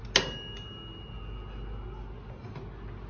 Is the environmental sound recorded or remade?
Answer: recorded